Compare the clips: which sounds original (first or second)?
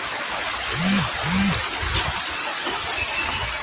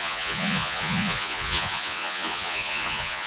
first